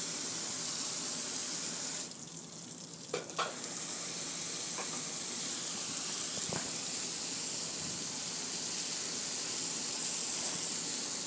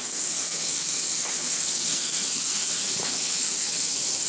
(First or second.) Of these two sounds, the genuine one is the first